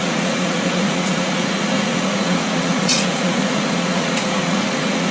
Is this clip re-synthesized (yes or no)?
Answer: yes